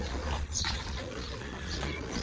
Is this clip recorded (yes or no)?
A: no